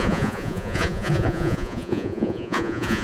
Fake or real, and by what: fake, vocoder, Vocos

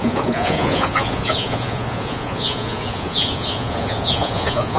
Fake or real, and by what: fake, vocoder, Vocos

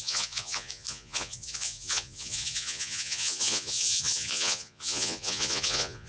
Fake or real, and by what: fake, vocoder, Vocos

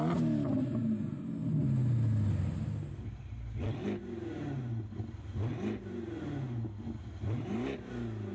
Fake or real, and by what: real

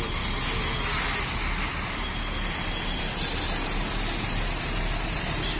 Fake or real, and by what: real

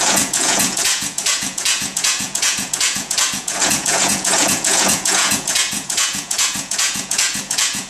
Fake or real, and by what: fake, vocoder, Vocos